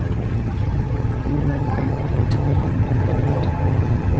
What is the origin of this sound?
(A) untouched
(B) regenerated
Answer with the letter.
B